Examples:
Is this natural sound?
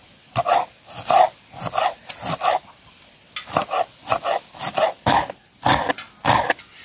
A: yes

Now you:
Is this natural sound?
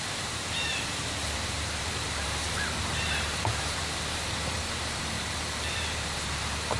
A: no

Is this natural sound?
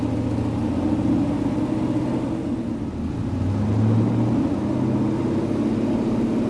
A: yes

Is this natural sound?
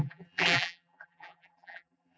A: no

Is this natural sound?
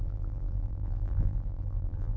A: no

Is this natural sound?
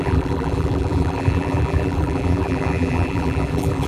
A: no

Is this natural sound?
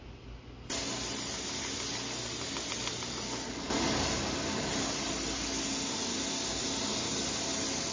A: yes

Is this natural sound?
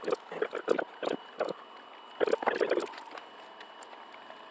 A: yes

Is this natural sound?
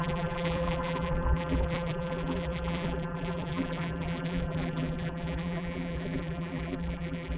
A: no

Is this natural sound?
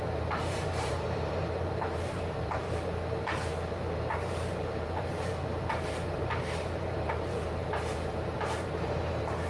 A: no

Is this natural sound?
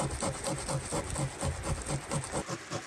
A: yes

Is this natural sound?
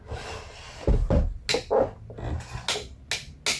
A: yes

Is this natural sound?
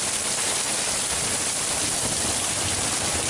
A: no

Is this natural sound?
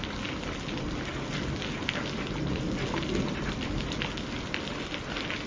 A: yes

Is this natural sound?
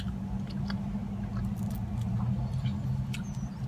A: yes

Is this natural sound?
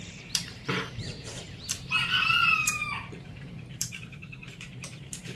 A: no